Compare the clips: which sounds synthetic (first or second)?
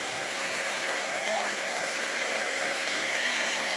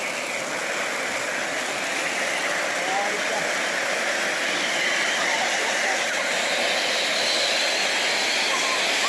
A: first